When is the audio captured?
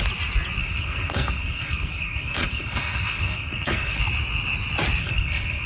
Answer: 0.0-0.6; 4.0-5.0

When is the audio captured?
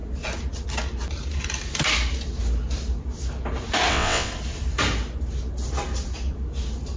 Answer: 0.0-3.9; 4.3-7.0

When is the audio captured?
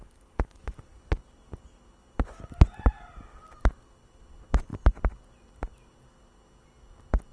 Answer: 0.0-7.3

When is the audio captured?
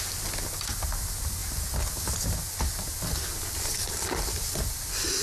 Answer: 0.0-5.2